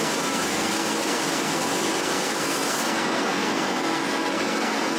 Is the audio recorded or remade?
remade